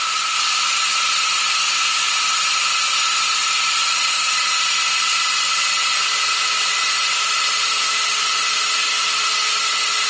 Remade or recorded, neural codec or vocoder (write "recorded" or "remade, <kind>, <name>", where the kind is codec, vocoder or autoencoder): recorded